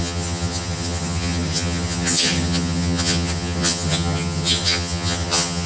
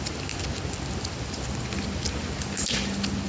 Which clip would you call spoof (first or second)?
first